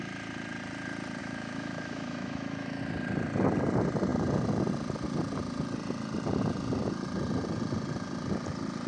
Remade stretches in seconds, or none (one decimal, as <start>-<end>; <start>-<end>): 1.2-2.8